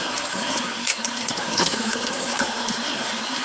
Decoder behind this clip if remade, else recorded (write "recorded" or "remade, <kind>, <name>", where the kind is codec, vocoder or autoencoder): remade, codec, SNAC